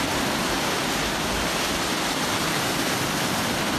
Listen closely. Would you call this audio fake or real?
real